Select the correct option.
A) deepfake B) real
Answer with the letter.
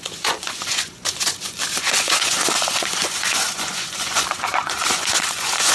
A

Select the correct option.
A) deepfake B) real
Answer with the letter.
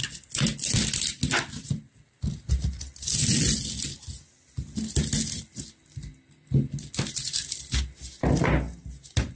B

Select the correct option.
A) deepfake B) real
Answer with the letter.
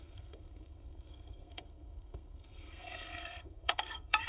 A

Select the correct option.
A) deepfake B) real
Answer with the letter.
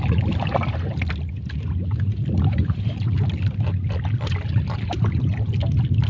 B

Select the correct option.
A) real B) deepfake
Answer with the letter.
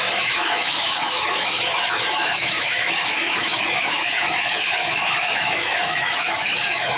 B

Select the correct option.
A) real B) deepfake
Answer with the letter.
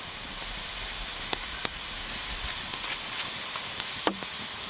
A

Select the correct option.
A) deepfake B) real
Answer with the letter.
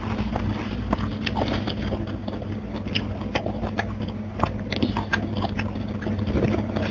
B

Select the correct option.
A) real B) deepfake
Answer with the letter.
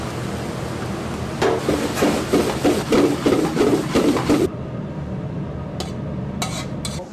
A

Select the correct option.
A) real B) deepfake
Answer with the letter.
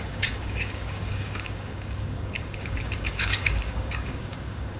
B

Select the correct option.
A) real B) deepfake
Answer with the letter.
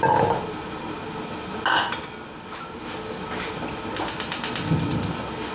A